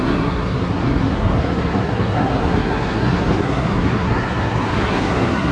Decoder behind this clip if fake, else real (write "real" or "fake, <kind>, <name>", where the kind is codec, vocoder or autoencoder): fake, codec, SNAC